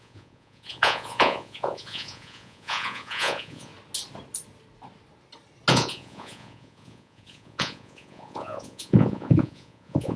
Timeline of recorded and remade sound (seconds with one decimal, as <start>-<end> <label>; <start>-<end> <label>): 0.0-3.7 remade; 3.7-5.7 recorded; 5.7-10.2 remade